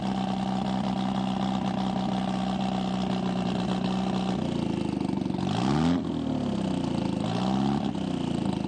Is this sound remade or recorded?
recorded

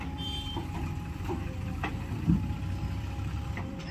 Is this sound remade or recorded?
remade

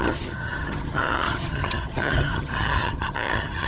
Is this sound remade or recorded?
remade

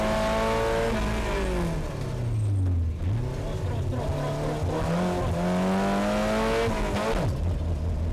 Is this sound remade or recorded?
recorded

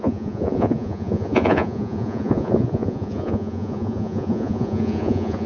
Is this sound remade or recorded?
remade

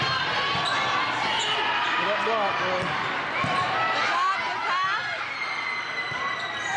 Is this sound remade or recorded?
recorded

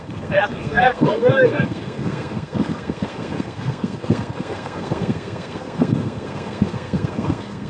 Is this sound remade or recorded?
remade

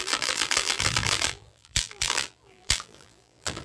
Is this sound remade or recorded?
remade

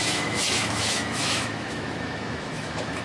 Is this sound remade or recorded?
remade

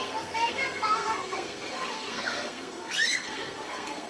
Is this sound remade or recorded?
remade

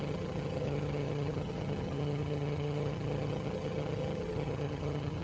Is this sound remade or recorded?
remade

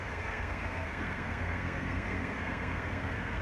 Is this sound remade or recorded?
remade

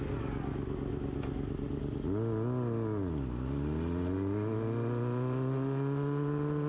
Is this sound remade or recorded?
recorded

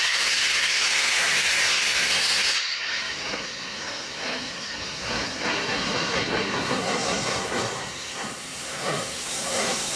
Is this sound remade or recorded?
remade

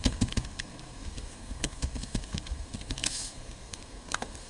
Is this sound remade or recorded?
remade